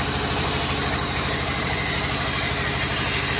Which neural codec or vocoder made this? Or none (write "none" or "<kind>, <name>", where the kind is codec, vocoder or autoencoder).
none